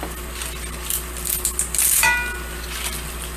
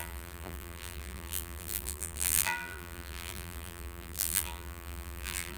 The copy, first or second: second